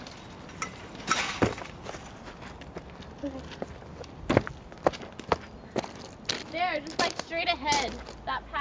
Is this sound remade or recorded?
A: recorded